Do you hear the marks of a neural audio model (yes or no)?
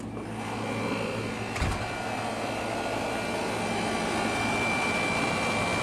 no